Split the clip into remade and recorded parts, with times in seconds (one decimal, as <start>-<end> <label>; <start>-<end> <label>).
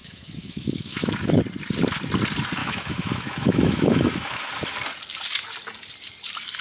0.0-1.4 remade; 1.4-2.6 recorded; 2.6-4.5 remade; 4.5-6.6 recorded